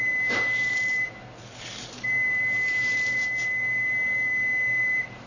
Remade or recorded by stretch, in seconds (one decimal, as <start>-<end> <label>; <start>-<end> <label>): 0.0-4.3 remade; 4.3-4.8 recorded; 4.8-5.3 remade